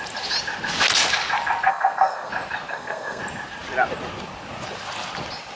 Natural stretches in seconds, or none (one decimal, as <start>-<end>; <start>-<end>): 0.0-1.7; 2.3-2.7; 3.2-5.6